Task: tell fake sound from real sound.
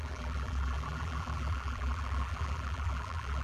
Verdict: fake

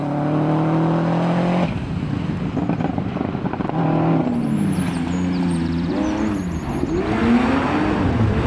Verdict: real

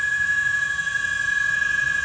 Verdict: fake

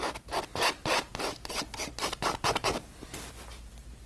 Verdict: real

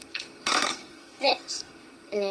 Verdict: fake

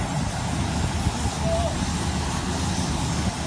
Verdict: real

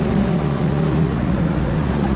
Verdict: fake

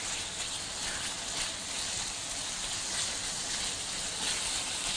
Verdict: real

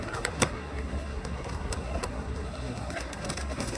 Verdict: fake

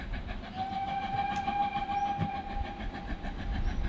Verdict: real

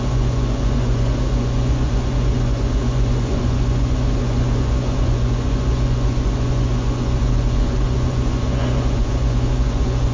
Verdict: fake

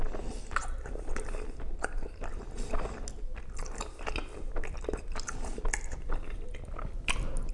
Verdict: real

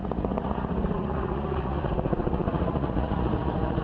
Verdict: fake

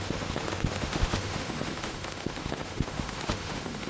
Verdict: fake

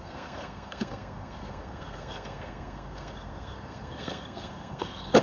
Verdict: fake